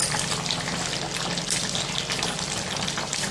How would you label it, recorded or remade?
recorded